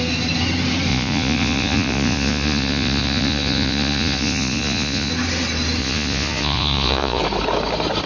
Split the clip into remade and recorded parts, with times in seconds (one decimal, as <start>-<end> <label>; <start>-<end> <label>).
0.0-0.9 recorded; 0.9-5.1 remade; 5.1-5.8 recorded; 5.8-7.2 remade; 7.2-8.1 recorded